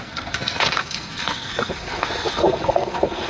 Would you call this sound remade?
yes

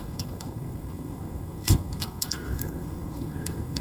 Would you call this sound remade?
yes